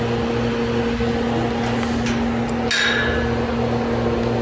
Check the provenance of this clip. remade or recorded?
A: recorded